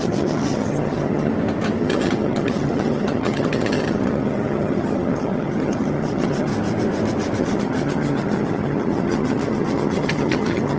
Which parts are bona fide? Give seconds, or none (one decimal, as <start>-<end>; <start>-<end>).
1.3-1.8; 6.5-7.4